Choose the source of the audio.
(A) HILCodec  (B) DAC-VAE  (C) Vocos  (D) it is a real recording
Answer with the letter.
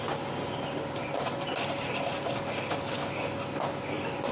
D